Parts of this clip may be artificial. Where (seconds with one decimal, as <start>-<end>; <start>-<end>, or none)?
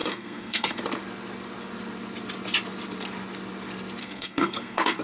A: 0.0-0.8; 4.0-5.0